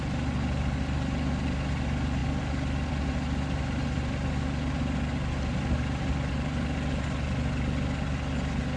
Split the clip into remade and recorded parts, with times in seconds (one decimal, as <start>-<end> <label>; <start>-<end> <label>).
0.0-8.8 recorded